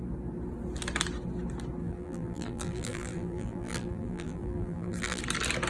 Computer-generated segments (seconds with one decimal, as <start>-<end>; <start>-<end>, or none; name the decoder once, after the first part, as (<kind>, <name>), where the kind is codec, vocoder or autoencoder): 1.8-5.2 (vocoder, BigVGAN v2)